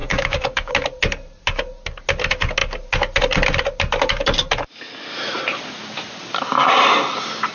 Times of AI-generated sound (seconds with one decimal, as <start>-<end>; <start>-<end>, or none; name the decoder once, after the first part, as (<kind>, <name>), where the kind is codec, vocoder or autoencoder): 0.0-0.7 (codec, DAC)